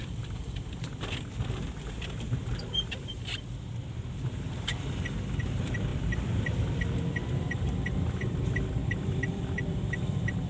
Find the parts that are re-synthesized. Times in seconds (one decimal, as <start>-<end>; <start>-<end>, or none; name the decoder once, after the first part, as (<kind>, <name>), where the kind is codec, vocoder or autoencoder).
0.0-0.9 (vocoder, BigVGAN v2); 3.1-4.7; 5.4-10.5